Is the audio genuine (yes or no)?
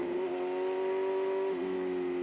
yes